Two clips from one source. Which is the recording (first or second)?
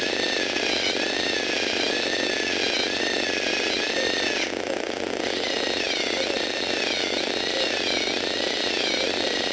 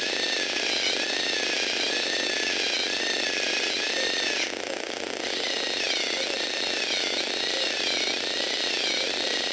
first